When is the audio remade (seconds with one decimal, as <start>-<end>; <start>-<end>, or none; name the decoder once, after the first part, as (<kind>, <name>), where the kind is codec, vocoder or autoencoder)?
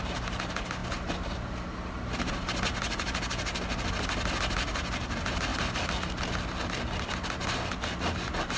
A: none